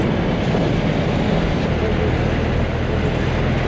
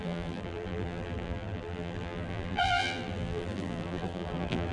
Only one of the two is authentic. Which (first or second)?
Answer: first